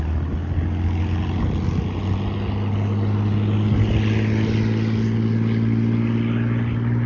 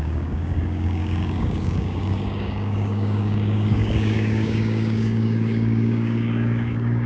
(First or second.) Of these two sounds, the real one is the first